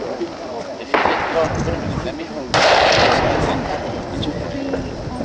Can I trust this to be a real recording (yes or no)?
yes